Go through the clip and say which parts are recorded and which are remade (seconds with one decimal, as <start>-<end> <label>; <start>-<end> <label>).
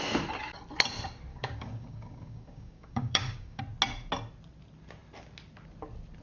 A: 0.0-1.3 recorded; 1.3-3.6 remade; 3.6-6.2 recorded